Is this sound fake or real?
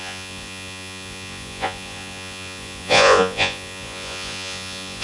fake